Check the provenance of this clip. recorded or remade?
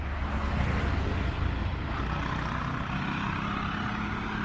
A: recorded